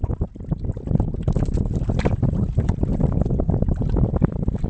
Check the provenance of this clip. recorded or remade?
recorded